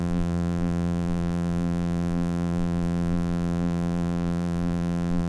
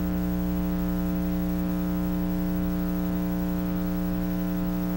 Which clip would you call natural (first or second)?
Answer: second